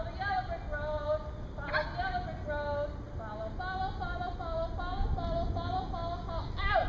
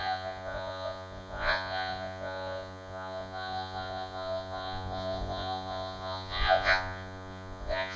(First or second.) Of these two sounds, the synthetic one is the second